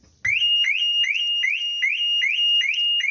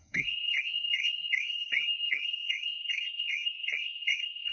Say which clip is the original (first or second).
first